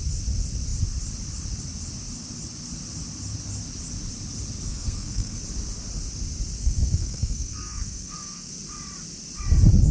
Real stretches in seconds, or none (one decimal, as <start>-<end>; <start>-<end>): 0.0-4.7; 5.4-6.6; 8.5-9.9